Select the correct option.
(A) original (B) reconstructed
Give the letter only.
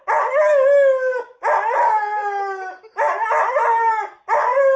A